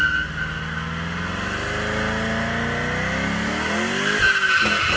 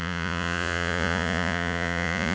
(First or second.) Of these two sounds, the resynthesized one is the second